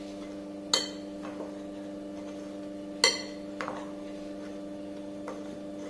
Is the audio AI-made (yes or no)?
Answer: no